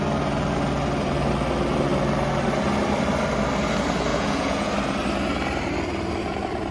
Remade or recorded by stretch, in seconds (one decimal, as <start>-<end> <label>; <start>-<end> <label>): 0.0-4.1 recorded; 4.1-4.7 remade; 4.7-6.7 recorded